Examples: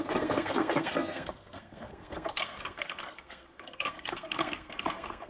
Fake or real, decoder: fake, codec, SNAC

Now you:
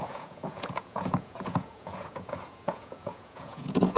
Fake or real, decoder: fake, vocoder, Vocos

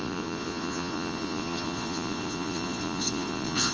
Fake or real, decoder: fake, vocoder, Vocos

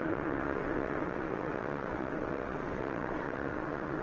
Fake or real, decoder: fake, vocoder, WaveNeXt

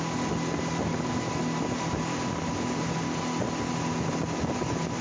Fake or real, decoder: real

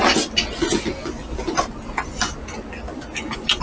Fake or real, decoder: real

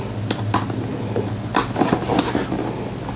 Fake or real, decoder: real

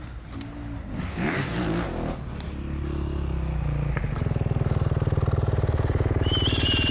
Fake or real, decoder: real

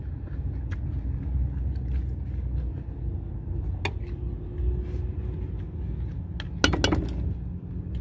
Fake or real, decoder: real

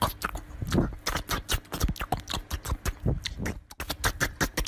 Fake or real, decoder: real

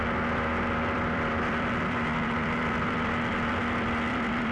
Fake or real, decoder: fake, vocoder, BigVGAN v2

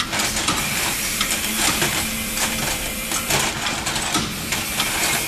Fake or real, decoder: fake, vocoder, BigVGAN v2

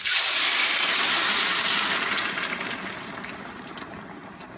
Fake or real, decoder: real